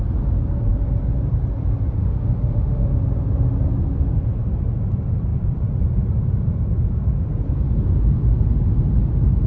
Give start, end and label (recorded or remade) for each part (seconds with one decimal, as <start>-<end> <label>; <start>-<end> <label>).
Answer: 0.0-2.0 recorded; 2.0-3.0 remade; 3.0-9.5 recorded